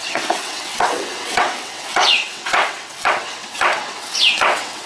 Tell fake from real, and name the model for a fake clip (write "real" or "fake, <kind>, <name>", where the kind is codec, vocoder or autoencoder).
fake, vocoder, WaveNeXt